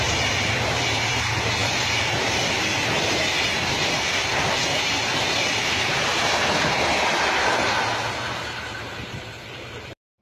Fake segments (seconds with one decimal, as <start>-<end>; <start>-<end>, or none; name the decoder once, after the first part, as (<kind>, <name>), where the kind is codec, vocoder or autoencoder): 0.0-4.6 (vocoder, BigVGAN v2); 5.2-10.2